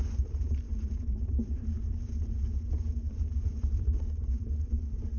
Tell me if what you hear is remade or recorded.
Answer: remade